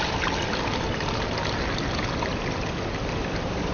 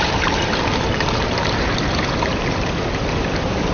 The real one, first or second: first